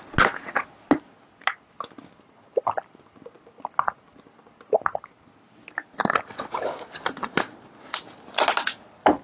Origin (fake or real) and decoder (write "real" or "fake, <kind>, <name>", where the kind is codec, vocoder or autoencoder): real